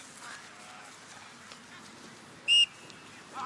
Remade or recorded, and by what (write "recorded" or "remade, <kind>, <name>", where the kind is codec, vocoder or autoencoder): recorded